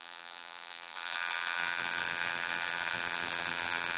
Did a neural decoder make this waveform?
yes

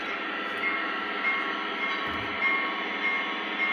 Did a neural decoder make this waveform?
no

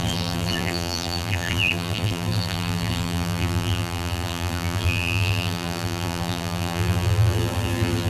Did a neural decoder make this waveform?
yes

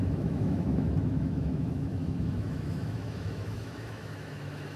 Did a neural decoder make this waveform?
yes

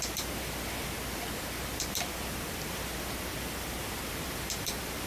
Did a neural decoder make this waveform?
yes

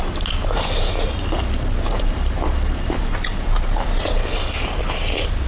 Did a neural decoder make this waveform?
no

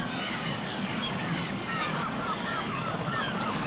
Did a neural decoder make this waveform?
yes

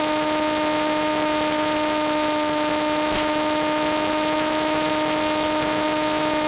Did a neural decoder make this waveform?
no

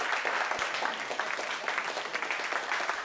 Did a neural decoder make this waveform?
no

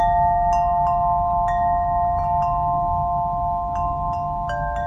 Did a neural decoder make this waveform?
no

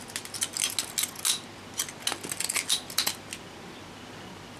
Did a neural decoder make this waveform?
no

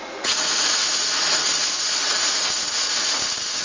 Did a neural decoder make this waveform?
yes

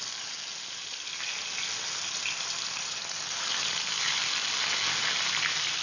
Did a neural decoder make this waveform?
no